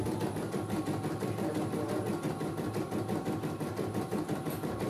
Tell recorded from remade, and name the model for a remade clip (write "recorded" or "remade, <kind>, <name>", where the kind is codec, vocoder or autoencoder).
recorded